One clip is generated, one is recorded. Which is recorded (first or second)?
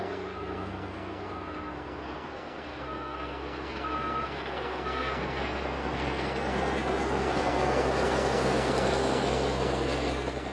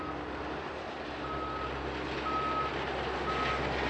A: second